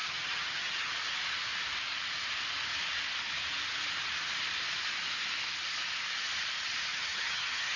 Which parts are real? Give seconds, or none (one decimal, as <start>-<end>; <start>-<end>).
0.9-6.9